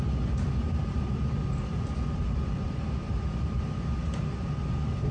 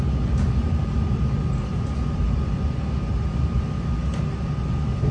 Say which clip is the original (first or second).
second